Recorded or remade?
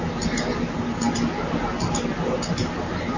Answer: recorded